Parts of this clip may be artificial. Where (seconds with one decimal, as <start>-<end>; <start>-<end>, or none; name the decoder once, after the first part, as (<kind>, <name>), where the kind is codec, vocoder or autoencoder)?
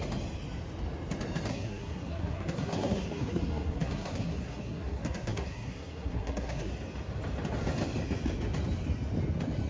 1.5-6.7 (codec, SNAC)